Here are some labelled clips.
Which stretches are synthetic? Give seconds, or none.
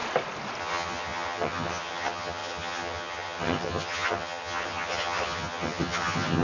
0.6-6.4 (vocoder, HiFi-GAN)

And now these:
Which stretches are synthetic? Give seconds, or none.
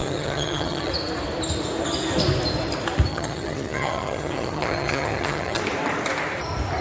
0.0-0.9 (vocoder, HiFi-GAN); 3.1-5.6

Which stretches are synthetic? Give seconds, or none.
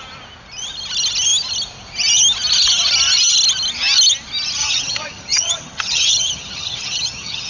4.6-7.5 (vocoder, HiFi-GAN)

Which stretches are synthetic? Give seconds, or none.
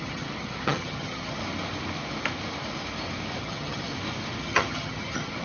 0.0-1.4 (vocoder, HiFi-GAN); 3.4-3.9; 4.4-5.4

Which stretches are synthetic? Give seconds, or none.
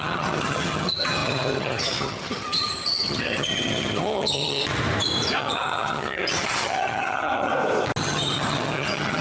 0.0-4.6 (vocoder, HiFi-GAN); 5.4-7.5; 8.0-9.2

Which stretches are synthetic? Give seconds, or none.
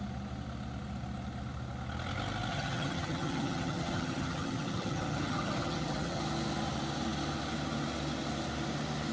2.5-6.2 (vocoder, HiFi-GAN)